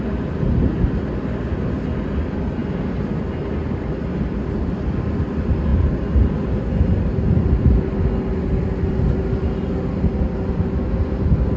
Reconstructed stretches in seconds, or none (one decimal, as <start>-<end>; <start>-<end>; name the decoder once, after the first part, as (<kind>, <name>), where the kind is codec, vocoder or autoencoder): none